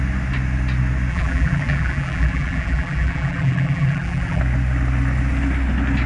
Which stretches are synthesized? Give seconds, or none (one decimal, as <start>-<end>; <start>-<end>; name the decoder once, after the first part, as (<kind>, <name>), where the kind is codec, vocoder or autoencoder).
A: 1.1-4.4 (vocoder, BigVGAN v2)